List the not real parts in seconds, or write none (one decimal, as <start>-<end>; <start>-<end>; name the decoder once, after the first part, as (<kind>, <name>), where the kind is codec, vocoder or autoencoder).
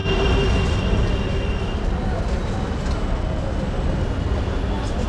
none